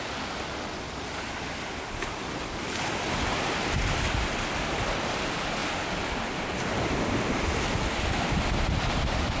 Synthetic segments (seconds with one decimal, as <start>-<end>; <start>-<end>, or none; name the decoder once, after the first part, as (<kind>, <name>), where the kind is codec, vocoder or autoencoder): none